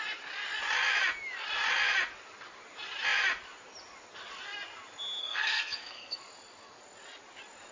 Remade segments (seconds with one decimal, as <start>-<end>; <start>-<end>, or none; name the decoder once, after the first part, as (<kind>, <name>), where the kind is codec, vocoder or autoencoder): 5.2-6.2 (codec, SNAC)